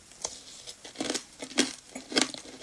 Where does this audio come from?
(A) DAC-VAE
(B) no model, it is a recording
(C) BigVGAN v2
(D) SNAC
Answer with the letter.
B